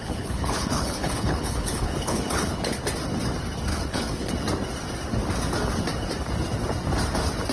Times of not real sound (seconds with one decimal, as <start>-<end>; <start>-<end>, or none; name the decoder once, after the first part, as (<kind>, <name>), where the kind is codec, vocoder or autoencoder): 0.0-2.8 (codec, HILCodec); 3.7-4.3